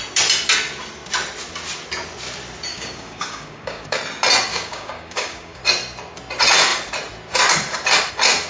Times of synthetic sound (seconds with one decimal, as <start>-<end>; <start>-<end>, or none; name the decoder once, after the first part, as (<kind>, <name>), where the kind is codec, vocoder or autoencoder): 2.7-4.0 (codec, DAC); 4.5-5.6